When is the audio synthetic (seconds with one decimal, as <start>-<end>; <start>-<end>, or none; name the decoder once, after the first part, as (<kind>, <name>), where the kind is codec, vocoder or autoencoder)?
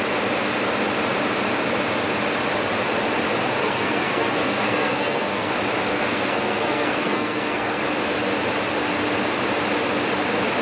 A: 3.6-5.5 (codec, SNAC); 5.9-7.8